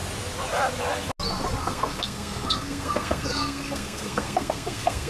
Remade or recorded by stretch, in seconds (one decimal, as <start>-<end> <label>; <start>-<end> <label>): 0.0-1.6 recorded; 1.6-5.1 remade